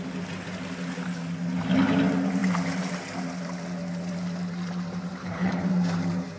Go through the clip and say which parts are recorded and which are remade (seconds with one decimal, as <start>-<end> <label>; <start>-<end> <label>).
0.0-5.2 recorded; 5.2-5.7 remade; 5.7-6.4 recorded